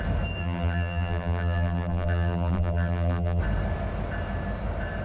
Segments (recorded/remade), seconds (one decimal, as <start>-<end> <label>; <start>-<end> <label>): 0.0-0.4 recorded; 0.4-3.4 remade; 3.4-5.0 recorded